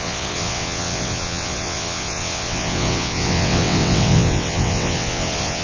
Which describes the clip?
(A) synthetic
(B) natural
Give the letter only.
A